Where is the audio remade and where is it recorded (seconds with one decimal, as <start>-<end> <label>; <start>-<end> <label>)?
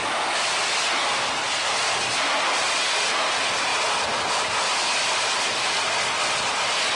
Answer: 0.0-7.0 recorded